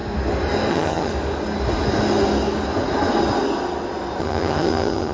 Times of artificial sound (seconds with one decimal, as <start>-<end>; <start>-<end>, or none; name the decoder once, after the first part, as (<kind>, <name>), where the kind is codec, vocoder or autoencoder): 0.7-1.1 (vocoder, HiFi-GAN); 4.2-5.1